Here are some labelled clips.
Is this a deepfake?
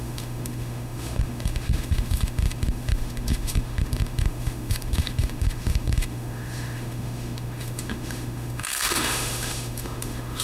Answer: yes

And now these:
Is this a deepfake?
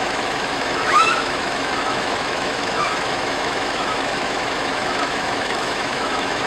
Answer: yes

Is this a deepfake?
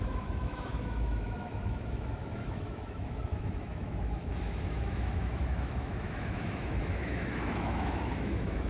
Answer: yes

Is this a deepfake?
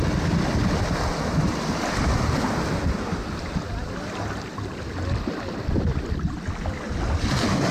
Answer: no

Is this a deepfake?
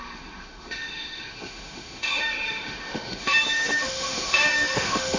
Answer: yes